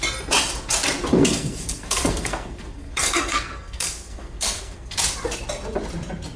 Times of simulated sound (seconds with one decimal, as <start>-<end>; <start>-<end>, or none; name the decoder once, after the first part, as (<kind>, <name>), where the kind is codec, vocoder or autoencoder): 1.1-4.9 (codec, SNAC)